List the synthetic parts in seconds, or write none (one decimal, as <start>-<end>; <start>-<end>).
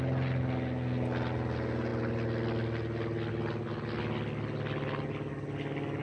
none